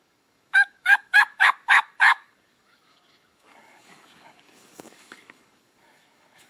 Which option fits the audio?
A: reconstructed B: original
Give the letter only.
A